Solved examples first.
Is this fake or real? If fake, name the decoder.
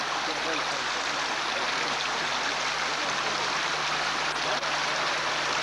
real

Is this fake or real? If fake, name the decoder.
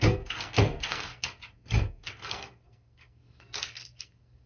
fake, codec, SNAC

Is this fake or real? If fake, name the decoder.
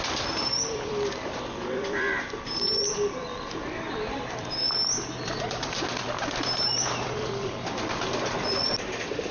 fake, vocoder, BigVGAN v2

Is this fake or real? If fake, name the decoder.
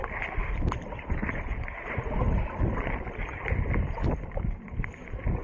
real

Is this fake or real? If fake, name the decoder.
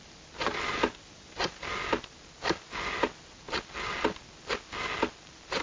real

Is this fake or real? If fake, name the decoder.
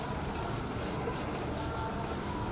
real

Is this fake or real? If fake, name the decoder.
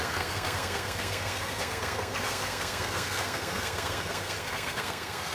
fake, codec, SNAC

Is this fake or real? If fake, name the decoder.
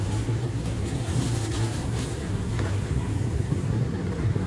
fake, codec, SNAC